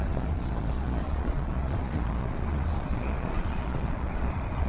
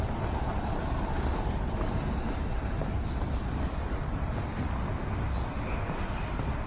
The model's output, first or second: first